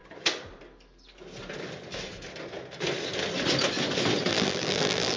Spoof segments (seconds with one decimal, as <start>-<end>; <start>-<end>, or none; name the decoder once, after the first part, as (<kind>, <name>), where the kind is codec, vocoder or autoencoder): 4.3-5.2 (vocoder, BigVGAN v2)